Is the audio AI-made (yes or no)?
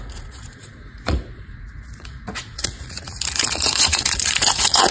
yes